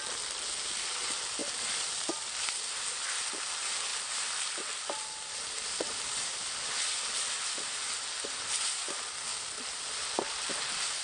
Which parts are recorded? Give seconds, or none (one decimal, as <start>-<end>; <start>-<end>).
0.0-1.4; 2.3-3.9; 7.8-9.3